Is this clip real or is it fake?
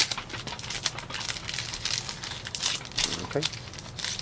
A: real